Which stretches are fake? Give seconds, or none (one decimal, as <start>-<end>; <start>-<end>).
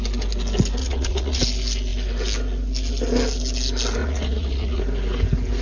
0.8-1.4; 4.0-4.8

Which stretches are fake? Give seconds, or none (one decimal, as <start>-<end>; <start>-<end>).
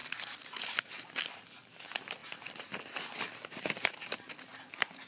4.5-5.1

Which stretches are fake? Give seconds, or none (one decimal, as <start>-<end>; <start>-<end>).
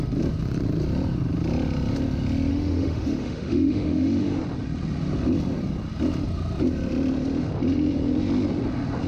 2.5-4.4